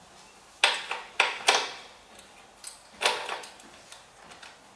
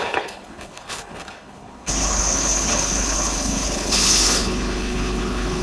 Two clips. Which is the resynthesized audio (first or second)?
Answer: second